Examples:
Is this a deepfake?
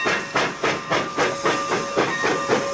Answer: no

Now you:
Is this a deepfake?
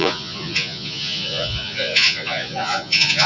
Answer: yes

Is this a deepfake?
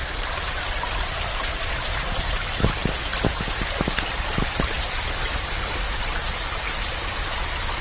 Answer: no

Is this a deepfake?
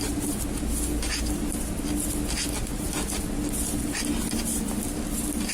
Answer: no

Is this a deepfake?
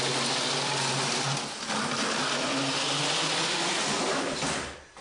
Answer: no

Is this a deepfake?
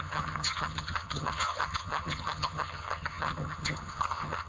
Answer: yes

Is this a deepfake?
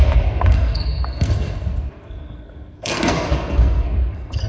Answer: yes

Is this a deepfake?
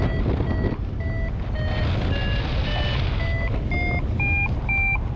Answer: no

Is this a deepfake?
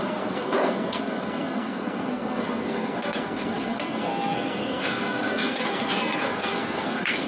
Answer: yes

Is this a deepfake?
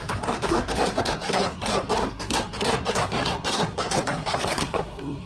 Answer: yes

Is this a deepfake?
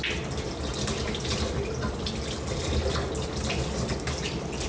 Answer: no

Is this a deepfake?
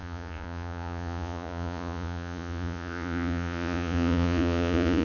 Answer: yes